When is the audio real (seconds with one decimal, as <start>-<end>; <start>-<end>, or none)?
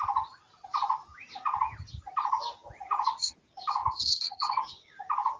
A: 0.0-5.4